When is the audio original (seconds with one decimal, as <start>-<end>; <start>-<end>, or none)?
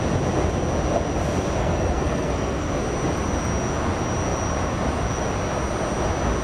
0.0-1.6; 2.7-6.4